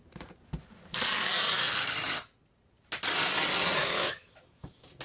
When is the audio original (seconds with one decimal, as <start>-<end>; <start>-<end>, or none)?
0.0-3.8